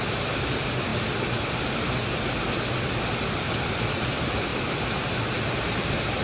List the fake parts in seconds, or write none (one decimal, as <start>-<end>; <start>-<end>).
none